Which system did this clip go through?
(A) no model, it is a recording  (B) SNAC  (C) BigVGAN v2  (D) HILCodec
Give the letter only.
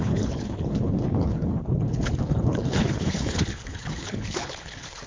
D